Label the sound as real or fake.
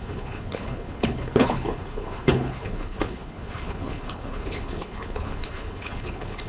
fake